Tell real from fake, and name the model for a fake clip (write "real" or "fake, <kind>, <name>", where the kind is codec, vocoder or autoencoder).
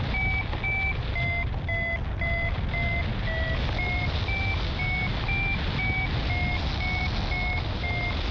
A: real